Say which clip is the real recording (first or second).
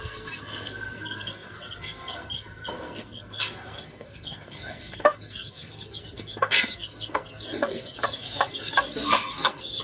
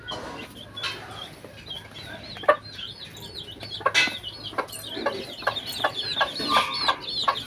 second